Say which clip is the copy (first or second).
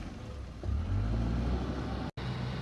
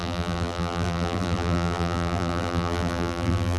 second